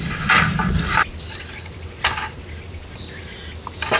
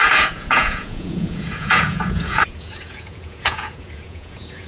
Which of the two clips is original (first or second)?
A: first